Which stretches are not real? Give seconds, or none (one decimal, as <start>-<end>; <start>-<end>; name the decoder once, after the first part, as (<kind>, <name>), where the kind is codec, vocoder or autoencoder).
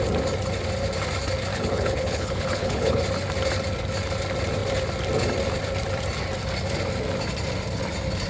1.5-3.0 (codec, HILCodec)